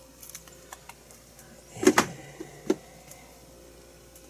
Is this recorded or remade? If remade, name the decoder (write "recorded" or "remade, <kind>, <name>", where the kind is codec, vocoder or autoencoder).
recorded